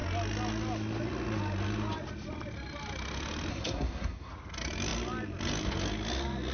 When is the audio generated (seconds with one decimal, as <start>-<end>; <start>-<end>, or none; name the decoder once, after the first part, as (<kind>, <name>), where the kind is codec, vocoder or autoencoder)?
3.5-4.3 (codec, SNAC)